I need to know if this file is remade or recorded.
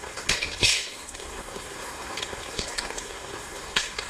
remade